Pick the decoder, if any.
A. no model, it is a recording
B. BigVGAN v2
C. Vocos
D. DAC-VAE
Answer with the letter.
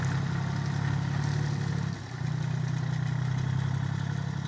A